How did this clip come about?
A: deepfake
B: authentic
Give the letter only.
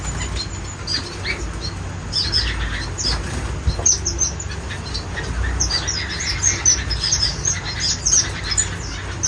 B